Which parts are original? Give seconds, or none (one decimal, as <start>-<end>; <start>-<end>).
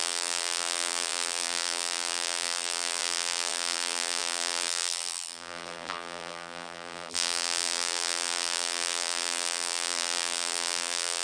none